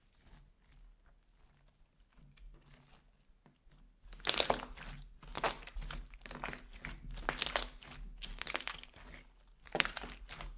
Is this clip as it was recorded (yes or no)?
yes